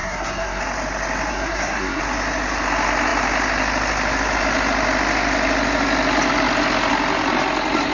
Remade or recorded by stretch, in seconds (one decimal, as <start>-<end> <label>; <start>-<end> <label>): 0.0-0.6 remade; 0.6-1.3 recorded; 1.3-2.0 remade; 2.0-7.9 recorded